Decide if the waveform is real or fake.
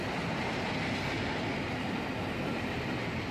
real